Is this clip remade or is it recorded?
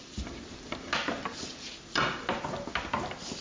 recorded